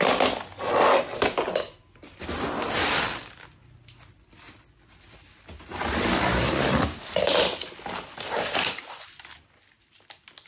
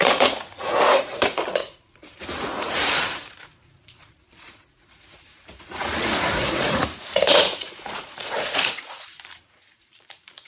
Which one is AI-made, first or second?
second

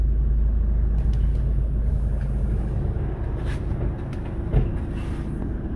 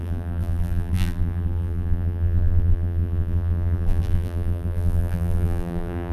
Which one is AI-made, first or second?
second